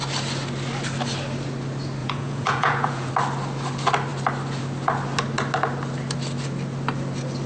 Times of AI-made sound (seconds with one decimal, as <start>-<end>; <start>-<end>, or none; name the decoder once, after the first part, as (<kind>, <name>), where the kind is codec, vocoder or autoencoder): 2.0-3.1 (vocoder, Vocos)